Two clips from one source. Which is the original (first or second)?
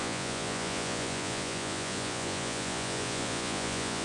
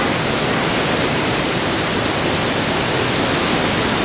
second